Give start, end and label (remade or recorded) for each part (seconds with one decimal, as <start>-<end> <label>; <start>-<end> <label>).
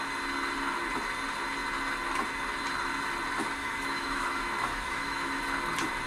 0.0-3.6 recorded; 3.6-5.4 remade; 5.4-6.1 recorded